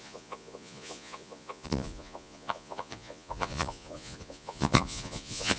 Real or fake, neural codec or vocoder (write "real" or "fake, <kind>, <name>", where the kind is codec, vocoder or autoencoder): fake, vocoder, Vocos